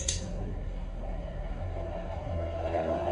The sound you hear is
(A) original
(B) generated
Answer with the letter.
B